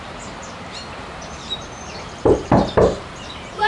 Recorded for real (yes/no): no